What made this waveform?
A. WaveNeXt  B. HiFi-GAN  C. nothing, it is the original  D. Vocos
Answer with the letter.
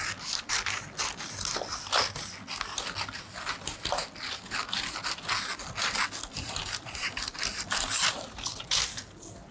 C